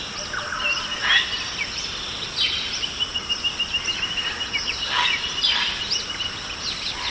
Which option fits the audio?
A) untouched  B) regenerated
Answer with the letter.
A